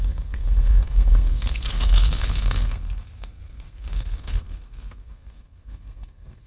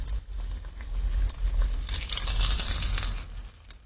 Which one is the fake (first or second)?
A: first